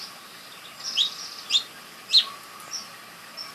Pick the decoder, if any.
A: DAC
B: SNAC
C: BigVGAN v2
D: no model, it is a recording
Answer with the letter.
D